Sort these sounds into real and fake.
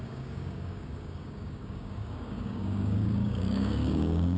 fake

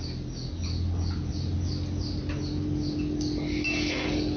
real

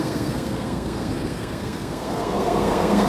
fake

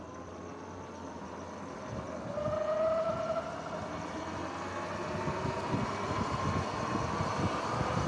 real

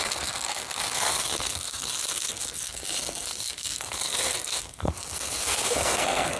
fake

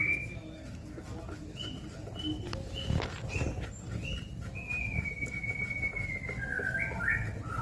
real